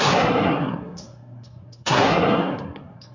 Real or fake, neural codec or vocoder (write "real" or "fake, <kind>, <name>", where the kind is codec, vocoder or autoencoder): fake, codec, SNAC